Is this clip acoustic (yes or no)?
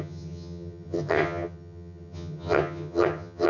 no